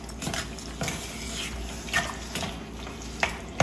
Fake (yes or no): no